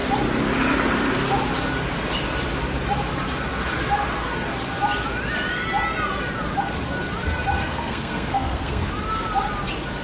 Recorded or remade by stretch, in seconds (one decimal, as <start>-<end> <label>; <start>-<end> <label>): 0.0-7.6 recorded; 7.6-8.9 remade; 8.9-10.0 recorded